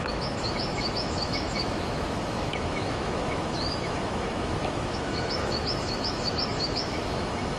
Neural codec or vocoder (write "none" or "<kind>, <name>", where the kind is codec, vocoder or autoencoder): autoencoder, DAC-VAE